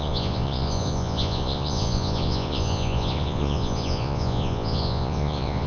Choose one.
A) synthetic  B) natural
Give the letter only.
A